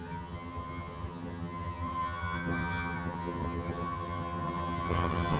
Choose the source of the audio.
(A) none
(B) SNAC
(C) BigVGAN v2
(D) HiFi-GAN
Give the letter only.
D